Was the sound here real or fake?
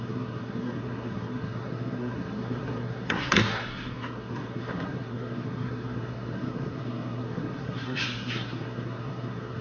fake